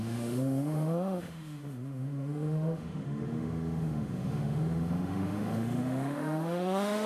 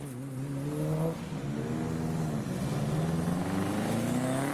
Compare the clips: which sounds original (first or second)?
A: second